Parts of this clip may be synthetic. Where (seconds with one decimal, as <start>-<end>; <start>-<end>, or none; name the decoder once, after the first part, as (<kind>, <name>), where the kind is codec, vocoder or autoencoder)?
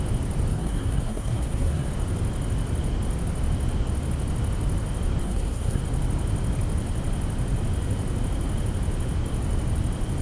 0.5-1.9 (codec, SNAC); 5.2-5.8